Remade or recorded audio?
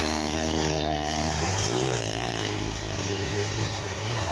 remade